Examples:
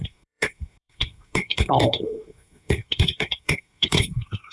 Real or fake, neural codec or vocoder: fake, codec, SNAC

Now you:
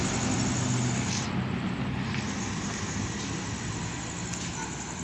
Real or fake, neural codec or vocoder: real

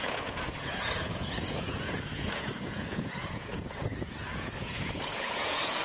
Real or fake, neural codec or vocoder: fake, vocoder, Vocos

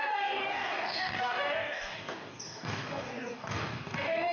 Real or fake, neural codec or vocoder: fake, codec, DAC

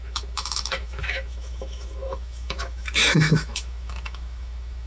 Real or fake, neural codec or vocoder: fake, autoencoder, DAC-VAE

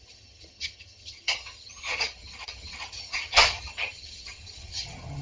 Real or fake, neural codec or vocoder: fake, vocoder, HiFi-GAN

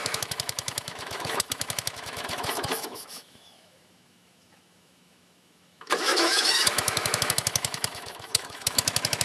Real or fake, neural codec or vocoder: fake, autoencoder, DAC-VAE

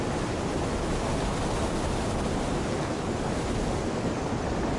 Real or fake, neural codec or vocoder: real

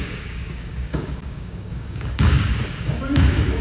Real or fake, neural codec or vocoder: fake, codec, DAC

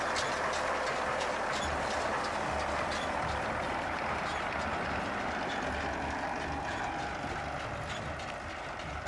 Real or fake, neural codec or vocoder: real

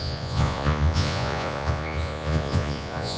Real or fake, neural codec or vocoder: fake, vocoder, Vocos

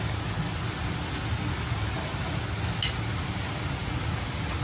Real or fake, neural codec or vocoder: real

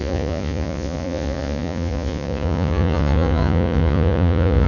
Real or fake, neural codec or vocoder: fake, vocoder, Vocos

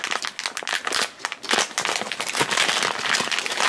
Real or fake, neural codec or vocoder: real